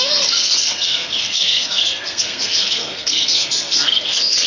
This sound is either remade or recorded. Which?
remade